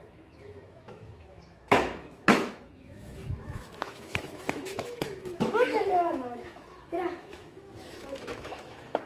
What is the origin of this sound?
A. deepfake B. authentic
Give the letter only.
A